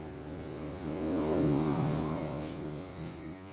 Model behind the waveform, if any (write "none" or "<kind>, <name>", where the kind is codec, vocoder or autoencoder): vocoder, Vocos